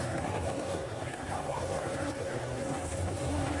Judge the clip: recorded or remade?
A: remade